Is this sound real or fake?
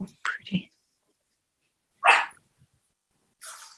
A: real